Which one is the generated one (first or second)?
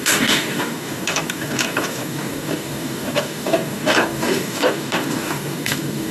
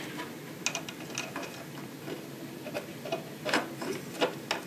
first